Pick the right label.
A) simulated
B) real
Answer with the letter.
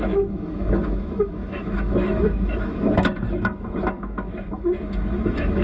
A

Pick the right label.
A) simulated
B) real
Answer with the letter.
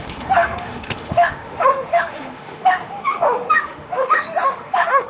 A